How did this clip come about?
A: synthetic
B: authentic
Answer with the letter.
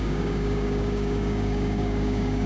A